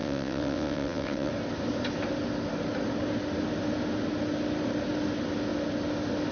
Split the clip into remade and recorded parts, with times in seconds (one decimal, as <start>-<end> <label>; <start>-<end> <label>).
0.0-1.3 remade; 1.3-6.3 recorded